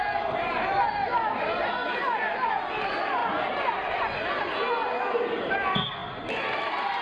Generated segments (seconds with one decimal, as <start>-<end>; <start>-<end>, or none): 0.0-1.8; 2.5-3.2; 5.1-6.0; 6.6-7.0